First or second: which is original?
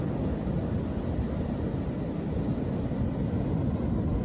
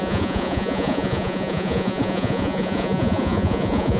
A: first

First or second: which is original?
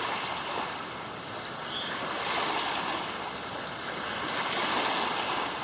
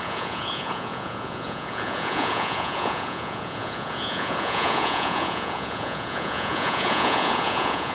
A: first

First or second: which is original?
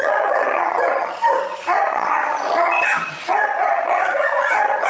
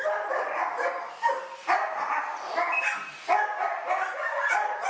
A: second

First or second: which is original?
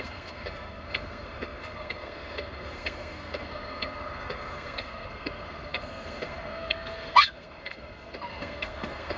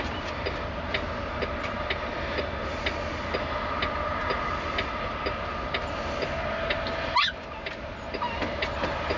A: second